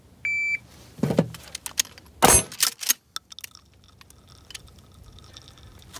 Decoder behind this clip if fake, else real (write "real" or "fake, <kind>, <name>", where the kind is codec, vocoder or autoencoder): real